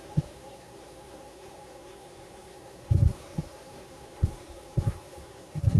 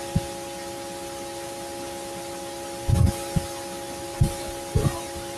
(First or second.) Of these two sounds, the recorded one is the second